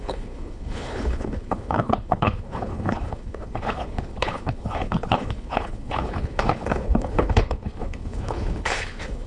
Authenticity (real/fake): fake